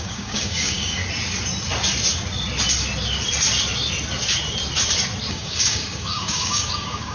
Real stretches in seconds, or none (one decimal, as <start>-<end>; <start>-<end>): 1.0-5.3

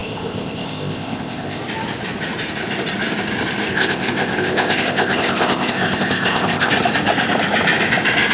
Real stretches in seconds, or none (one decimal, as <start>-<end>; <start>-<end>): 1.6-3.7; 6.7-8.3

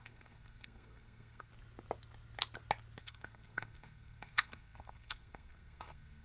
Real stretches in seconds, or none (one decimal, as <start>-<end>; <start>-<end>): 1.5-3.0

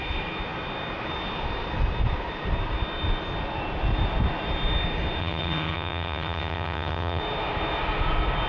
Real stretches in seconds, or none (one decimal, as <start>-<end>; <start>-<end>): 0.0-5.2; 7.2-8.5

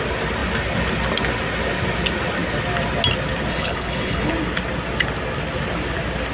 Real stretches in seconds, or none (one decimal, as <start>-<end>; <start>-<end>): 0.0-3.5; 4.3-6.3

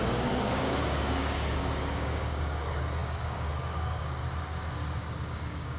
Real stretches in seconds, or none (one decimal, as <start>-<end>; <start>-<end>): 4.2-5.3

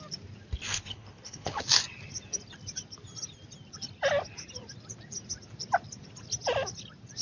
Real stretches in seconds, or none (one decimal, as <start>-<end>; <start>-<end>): 0.0-0.7; 1.6-7.2

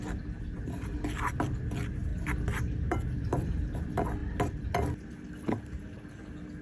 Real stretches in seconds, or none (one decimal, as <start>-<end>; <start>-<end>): 0.0-6.6